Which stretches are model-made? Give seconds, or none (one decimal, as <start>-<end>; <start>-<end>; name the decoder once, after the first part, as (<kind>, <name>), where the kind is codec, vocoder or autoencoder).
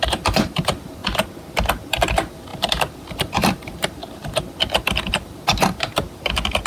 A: 0.0-1.0 (vocoder, BigVGAN v2); 1.9-4.0; 5.1-6.7